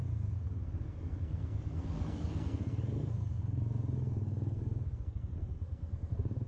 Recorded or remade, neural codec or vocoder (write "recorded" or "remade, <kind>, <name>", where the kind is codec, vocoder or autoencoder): remade, codec, SNAC